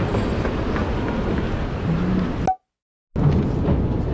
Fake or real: real